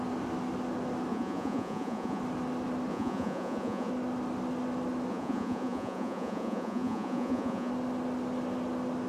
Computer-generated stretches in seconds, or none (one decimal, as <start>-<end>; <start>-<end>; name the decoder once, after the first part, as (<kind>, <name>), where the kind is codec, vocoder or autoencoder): 1.1-2.2 (vocoder, Vocos); 2.9-3.9; 5.1-7.7